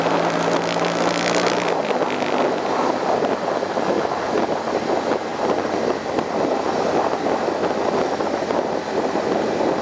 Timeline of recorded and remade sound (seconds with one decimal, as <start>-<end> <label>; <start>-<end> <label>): 0.0-9.8 recorded